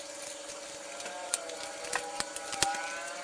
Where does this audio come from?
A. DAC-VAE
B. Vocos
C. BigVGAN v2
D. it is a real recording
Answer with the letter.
D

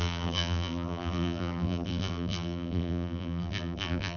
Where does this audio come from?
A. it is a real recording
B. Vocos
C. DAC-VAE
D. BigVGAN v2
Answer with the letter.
D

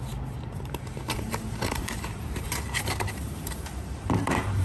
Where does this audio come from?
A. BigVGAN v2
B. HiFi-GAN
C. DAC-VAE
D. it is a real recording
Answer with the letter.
A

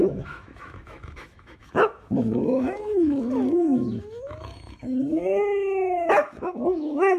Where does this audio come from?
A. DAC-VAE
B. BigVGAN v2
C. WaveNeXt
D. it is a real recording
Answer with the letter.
A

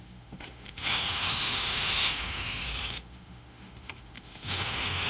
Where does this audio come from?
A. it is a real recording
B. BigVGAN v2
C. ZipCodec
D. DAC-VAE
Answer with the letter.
D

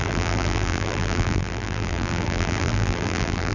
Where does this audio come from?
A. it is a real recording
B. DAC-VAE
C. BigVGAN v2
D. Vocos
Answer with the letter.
C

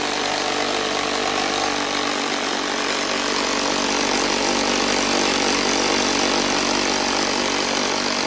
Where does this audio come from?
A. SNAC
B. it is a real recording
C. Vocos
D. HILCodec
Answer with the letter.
B